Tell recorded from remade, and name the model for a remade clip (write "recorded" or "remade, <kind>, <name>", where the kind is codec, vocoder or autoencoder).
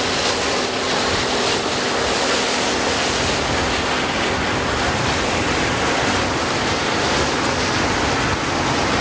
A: recorded